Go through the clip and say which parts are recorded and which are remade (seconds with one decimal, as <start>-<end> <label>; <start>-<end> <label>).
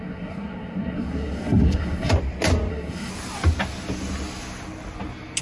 0.0-2.1 remade; 2.1-2.7 recorded; 2.7-3.1 remade; 3.1-5.4 recorded